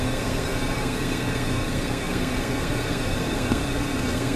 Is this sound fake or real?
fake